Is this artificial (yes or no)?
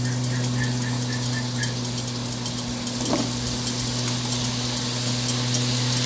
no